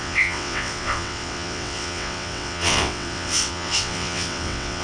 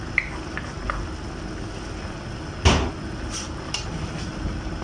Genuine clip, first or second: second